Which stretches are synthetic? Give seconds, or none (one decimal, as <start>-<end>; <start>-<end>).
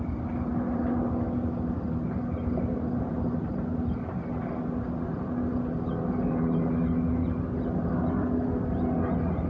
none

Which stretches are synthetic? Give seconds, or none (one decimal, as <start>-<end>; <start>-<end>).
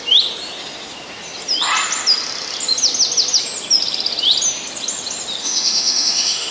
5.4-6.5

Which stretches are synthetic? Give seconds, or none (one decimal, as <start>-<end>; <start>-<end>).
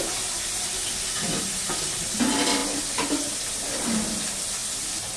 none